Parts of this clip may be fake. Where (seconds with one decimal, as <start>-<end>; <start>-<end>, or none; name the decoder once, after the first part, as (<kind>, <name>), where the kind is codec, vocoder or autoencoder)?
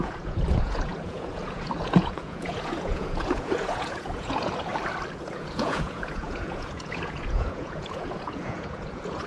0.0-4.7 (vocoder, Vocos); 5.2-9.3